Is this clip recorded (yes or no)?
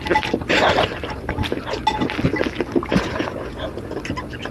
yes